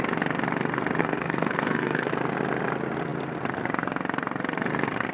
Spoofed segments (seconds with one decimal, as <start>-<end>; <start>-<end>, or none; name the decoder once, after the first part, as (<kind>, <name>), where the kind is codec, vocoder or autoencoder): 1.0-2.1 (codec, SNAC)